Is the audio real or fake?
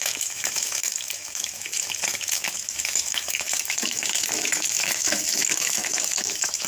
fake